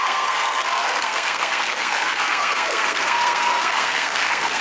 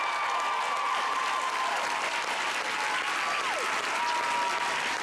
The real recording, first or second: second